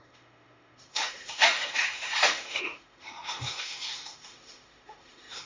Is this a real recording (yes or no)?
no